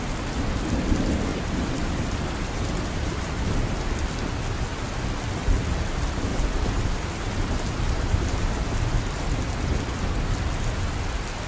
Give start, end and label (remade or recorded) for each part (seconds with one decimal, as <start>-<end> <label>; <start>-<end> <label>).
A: 0.0-1.3 recorded; 1.3-3.2 remade; 3.2-6.3 recorded; 6.3-8.9 remade; 8.9-11.5 recorded